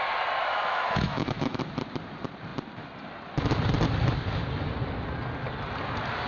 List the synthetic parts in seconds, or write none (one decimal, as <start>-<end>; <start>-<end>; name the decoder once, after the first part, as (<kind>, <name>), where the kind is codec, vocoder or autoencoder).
0.5-1.6 (autoencoder, DAC-VAE)